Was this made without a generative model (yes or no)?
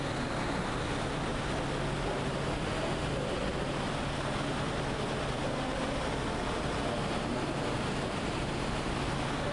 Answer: yes